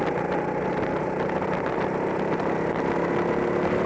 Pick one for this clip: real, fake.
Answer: real